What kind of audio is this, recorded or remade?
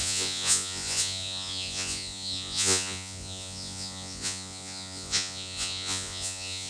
remade